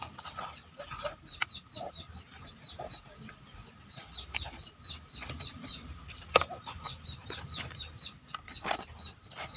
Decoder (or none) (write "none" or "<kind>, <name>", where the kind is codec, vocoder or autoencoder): none